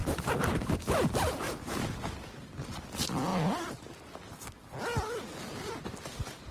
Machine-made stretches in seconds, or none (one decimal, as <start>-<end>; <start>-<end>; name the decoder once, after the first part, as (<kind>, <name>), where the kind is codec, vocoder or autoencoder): 0.0-0.8 (vocoder, BigVGAN v2); 3.3-4.1